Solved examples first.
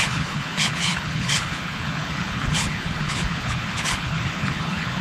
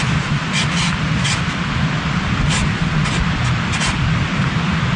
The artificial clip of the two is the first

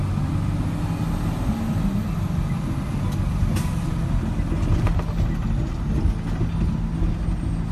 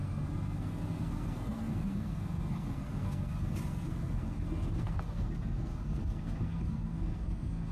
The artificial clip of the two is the second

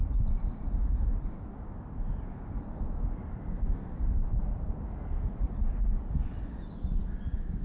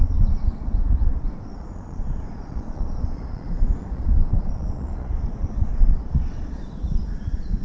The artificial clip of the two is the second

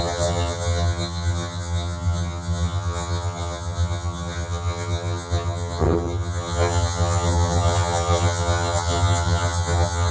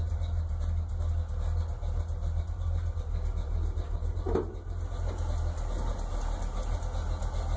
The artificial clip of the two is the first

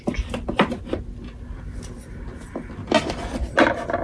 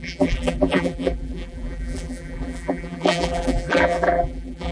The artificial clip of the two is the second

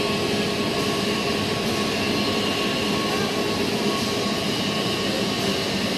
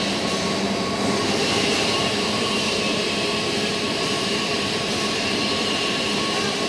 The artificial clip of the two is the second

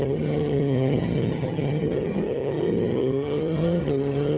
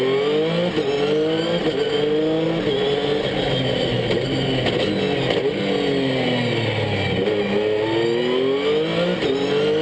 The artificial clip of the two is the first